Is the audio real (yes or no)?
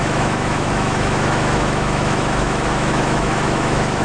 no